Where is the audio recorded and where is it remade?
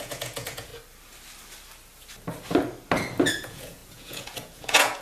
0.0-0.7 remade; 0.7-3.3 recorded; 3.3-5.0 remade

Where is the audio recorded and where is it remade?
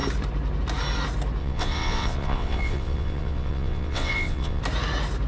0.0-1.4 recorded; 1.4-4.6 remade; 4.6-5.3 recorded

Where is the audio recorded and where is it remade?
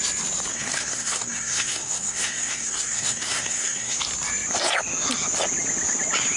0.0-0.5 recorded; 0.5-4.0 remade; 4.0-6.4 recorded